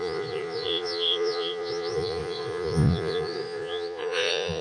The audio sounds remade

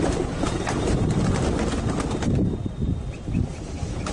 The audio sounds recorded